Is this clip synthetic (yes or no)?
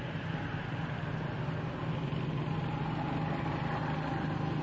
no